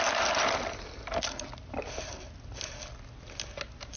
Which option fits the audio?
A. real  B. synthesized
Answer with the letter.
A